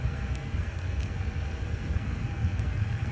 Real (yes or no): no